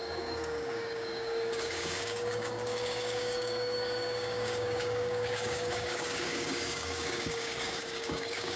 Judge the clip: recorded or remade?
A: remade